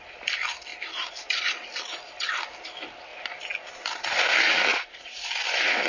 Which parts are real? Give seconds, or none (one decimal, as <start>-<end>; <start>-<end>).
0.0-4.7; 5.3-5.9